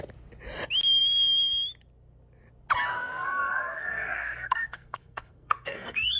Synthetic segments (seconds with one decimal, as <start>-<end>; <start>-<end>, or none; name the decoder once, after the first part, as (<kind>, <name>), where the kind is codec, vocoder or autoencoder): 2.9-6.2 (codec, SNAC)